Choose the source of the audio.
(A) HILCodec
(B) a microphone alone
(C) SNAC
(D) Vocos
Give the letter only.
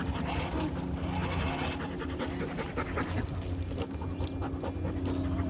B